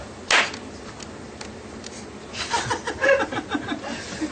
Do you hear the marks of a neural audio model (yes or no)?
no